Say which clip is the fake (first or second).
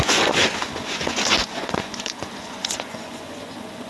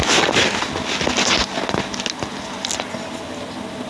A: first